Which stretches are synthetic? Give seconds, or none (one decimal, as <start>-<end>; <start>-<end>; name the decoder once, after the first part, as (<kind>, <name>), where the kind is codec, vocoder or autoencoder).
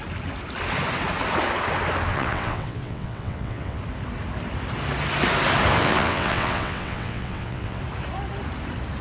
2.1-3.8 (vocoder, WaveNeXt); 5.8-7.8